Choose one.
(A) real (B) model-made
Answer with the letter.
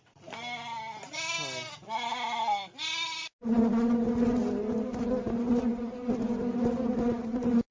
A